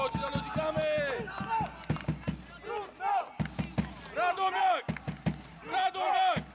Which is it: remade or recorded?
recorded